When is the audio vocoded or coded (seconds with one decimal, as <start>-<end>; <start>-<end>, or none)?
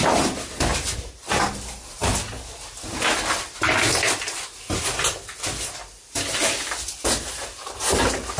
0.0-0.7; 1.3-2.0; 2.6-8.4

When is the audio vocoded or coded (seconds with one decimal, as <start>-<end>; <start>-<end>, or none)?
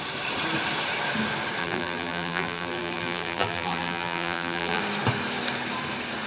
1.6-4.8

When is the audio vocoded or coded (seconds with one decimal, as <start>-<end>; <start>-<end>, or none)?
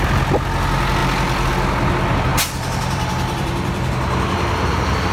1.0-1.5; 2.3-3.9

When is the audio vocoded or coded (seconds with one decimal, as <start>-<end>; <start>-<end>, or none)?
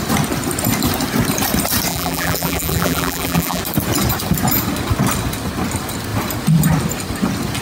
1.9-3.6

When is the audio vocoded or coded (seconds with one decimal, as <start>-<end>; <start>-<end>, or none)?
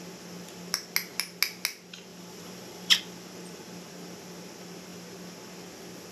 2.1-3.0